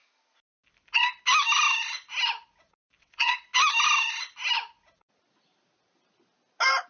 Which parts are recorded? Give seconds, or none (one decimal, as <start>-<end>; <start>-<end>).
0.0-3.0; 3.5-6.9

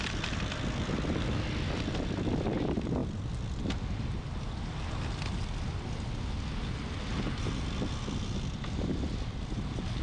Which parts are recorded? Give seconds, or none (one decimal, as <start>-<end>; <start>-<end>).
0.0-10.0